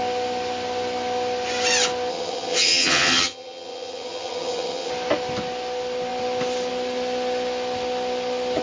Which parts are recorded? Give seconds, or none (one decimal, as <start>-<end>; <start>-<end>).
0.0-2.1; 4.9-8.6